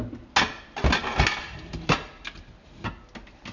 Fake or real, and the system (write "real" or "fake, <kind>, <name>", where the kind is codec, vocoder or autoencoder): real